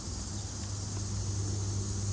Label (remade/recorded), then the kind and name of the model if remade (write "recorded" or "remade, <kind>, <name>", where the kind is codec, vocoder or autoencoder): recorded